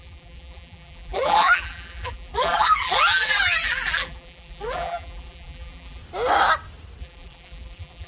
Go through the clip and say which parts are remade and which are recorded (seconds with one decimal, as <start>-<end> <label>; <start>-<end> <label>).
0.0-6.0 remade; 6.0-7.0 recorded; 7.0-8.1 remade